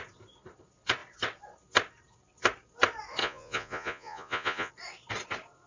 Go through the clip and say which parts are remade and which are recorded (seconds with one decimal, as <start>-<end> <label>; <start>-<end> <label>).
0.0-3.2 recorded; 3.2-4.7 remade; 4.7-5.7 recorded